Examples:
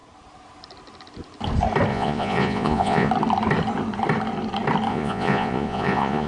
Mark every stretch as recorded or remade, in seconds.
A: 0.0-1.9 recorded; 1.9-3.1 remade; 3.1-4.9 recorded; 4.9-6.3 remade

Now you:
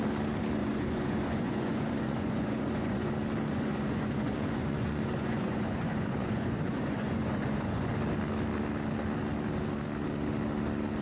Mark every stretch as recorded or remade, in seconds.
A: 0.0-0.6 recorded; 0.6-3.1 remade; 3.1-3.5 recorded; 3.5-7.9 remade; 7.9-11.0 recorded

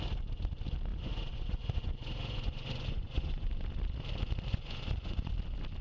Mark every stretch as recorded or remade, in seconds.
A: 0.0-0.9 recorded; 0.9-3.5 remade; 3.5-4.5 recorded; 4.5-5.3 remade; 5.3-5.8 recorded

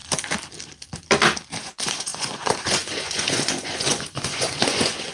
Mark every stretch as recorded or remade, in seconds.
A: 0.0-1.6 recorded; 1.6-5.1 remade

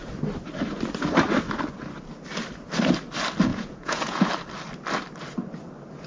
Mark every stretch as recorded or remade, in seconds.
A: 0.0-3.5 recorded; 3.5-4.3 remade; 4.3-6.1 recorded

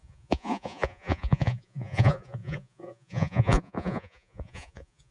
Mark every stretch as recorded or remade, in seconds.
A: 0.0-5.1 remade

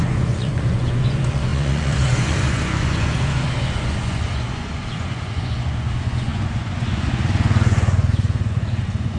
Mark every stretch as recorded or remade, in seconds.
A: 0.0-9.2 remade

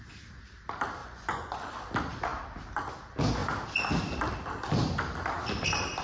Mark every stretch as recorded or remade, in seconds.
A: 0.0-1.0 recorded; 1.0-1.7 remade; 1.7-6.0 recorded